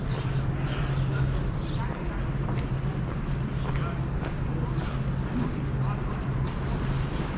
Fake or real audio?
real